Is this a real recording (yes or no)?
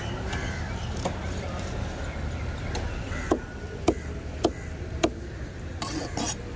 yes